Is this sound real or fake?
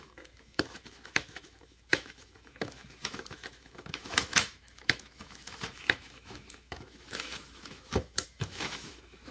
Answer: fake